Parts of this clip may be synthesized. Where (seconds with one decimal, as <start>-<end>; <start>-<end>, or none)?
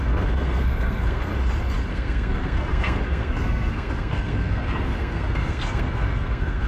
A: 0.0-1.3; 1.9-6.7